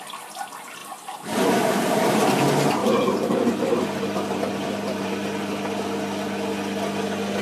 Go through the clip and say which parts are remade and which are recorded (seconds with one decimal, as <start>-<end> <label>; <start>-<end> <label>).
0.0-0.8 recorded; 0.8-2.3 remade; 2.3-2.8 recorded; 2.8-5.1 remade; 5.1-7.4 recorded